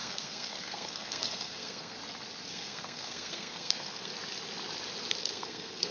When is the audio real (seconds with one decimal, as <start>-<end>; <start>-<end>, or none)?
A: 2.0-2.5; 4.1-5.2